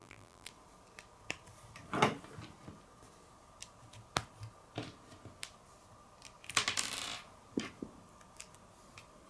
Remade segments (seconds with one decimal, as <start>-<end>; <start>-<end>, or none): 0.0-0.5